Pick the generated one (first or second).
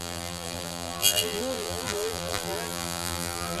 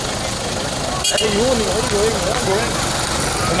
first